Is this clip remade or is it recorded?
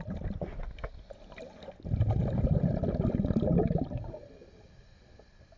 recorded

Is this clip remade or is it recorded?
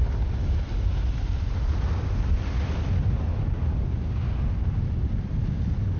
recorded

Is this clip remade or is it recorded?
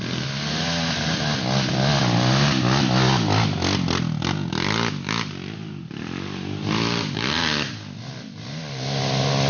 recorded